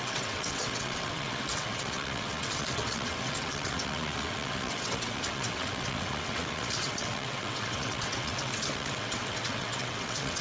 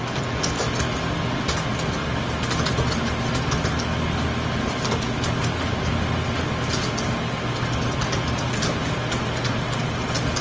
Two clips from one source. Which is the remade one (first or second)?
first